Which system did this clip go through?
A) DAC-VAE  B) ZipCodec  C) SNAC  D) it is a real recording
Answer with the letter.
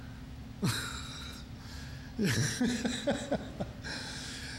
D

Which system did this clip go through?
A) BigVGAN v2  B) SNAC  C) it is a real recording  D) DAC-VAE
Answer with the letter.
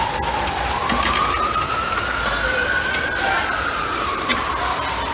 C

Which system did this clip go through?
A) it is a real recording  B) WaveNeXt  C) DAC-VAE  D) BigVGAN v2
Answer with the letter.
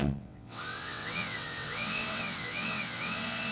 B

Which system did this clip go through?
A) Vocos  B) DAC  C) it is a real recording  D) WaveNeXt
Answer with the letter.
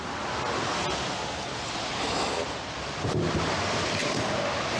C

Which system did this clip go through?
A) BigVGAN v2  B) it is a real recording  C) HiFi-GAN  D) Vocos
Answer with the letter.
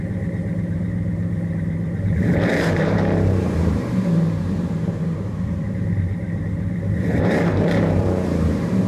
A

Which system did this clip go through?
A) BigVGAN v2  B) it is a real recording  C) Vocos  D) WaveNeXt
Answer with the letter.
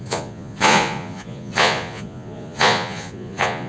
C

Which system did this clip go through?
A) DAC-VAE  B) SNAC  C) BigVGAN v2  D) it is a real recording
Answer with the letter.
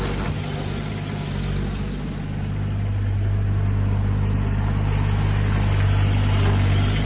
D